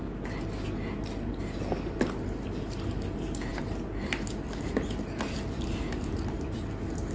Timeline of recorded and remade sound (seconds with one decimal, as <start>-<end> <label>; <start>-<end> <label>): 0.0-7.1 recorded